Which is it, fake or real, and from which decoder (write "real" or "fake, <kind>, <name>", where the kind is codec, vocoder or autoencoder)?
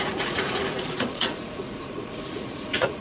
fake, vocoder, Vocos